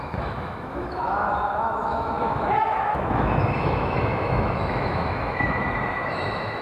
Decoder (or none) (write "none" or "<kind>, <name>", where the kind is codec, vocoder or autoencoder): autoencoder, DAC-VAE